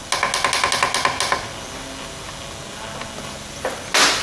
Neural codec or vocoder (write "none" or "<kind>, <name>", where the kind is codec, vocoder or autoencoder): none